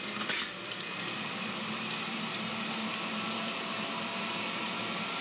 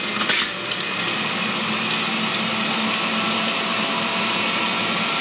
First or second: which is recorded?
second